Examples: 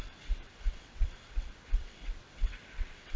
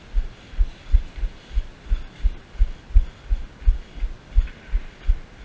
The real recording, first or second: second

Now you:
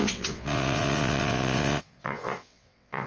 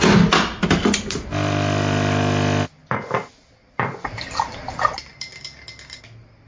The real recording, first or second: second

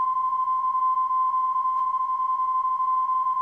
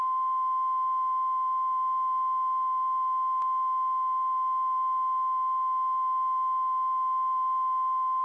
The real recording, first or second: second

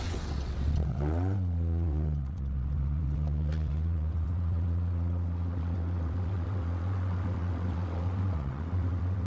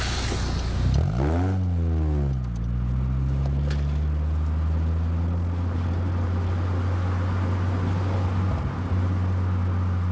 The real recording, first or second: second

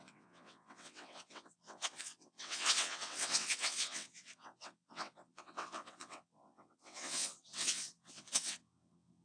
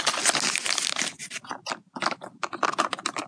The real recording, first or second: second